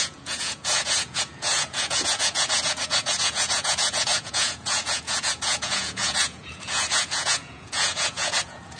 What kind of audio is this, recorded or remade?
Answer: remade